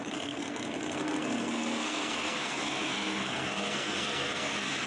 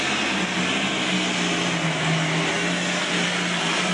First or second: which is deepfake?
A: first